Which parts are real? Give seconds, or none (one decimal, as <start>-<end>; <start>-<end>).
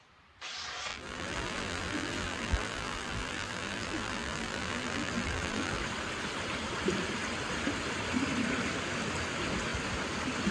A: 0.0-0.9; 5.8-10.5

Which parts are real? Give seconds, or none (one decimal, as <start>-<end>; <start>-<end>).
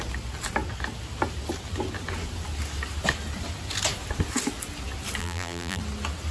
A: 0.0-5.2; 5.8-6.3